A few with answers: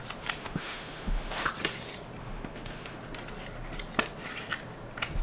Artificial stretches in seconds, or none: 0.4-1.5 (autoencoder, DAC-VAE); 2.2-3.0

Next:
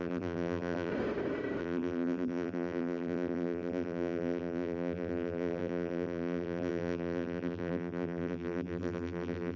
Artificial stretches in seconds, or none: 0.0-0.9 (vocoder, BigVGAN v2); 1.6-9.6

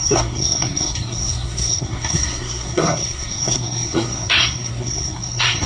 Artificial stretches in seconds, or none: 0.0-5.7 (codec, SNAC)

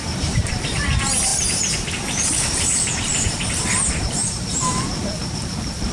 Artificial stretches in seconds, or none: 0.0-5.9 (vocoder, BigVGAN v2)

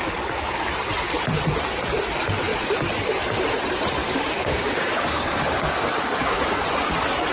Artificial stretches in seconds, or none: 4.0-6.6 (codec, DAC)